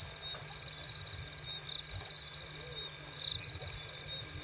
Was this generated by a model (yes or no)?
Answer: no